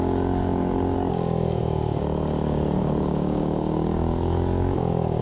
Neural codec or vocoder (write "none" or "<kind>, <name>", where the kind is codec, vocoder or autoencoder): codec, DAC